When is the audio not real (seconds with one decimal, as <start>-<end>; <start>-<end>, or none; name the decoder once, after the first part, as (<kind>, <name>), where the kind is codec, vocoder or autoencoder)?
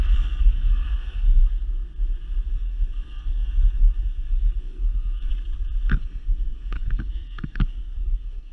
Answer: 0.0-1.4 (codec, SNAC); 2.5-5.3; 5.9-8.5